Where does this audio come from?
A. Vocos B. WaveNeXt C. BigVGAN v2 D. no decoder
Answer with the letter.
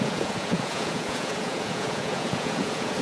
A